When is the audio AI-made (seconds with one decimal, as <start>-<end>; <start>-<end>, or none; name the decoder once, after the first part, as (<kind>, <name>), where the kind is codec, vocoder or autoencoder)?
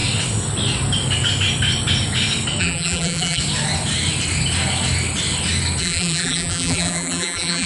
2.6-3.4 (vocoder, BigVGAN v2); 5.8-7.7